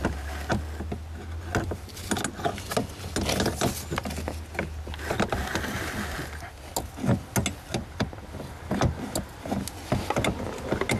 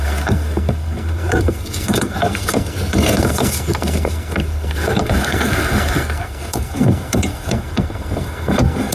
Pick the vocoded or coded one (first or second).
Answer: second